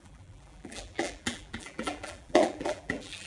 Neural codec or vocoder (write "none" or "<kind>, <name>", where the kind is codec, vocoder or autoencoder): vocoder, BigVGAN v2